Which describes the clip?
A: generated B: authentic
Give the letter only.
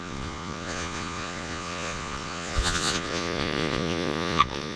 A